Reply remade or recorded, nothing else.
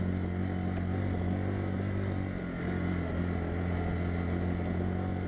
recorded